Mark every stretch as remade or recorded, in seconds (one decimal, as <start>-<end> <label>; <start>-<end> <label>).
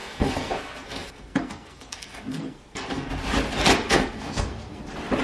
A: 0.0-3.1 remade; 3.1-3.8 recorded; 3.8-4.8 remade; 4.8-5.2 recorded